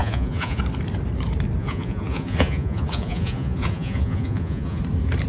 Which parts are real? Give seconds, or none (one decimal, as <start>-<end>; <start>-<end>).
0.6-1.6; 4.8-5.3